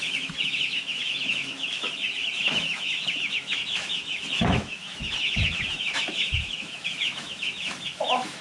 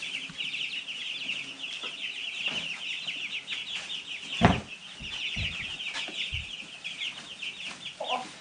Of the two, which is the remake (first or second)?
first